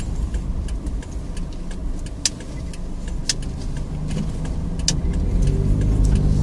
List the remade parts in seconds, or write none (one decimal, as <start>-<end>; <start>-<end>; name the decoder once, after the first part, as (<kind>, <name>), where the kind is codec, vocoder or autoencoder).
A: none

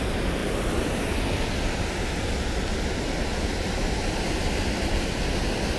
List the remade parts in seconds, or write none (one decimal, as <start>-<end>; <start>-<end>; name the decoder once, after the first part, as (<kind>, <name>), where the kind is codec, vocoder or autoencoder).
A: none

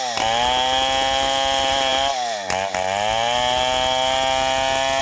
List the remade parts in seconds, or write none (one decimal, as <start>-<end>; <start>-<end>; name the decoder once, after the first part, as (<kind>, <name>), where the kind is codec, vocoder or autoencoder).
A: none

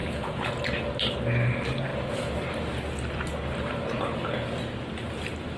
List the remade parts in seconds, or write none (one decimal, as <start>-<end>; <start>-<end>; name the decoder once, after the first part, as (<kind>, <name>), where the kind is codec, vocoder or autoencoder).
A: 0.0-0.6 (vocoder, Vocos)

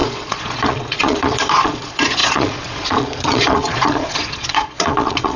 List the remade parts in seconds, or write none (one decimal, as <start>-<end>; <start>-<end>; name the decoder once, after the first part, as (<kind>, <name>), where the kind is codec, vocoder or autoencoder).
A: 0.0-5.4 (vocoder, Vocos)

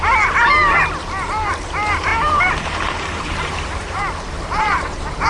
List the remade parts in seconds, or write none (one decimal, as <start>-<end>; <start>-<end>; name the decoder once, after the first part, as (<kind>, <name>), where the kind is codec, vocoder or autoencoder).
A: 2.1-5.3 (vocoder, BigVGAN v2)

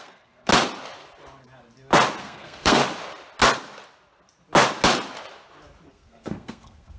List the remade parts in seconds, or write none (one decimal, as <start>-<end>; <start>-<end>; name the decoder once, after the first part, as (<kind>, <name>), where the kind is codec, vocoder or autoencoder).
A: 0.0-0.5 (codec, SNAC); 2.2-2.8; 5.9-7.0